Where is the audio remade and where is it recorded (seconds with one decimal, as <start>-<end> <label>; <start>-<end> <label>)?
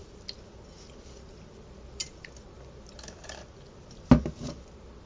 0.0-5.1 recorded